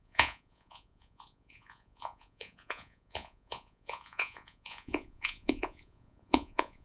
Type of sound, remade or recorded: remade